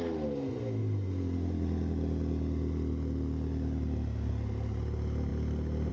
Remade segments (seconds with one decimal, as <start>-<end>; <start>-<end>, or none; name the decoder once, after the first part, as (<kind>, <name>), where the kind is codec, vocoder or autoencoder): none